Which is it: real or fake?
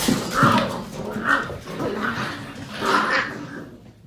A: real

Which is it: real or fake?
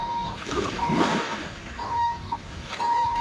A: fake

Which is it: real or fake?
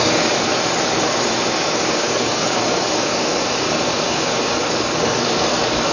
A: fake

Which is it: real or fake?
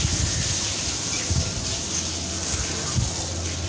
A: real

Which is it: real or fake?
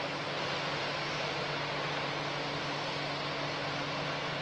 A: real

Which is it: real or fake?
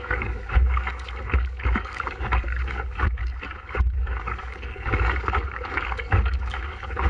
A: fake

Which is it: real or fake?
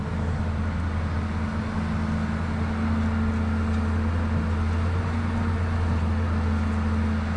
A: real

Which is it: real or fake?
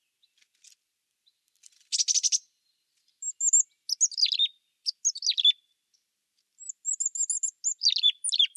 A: real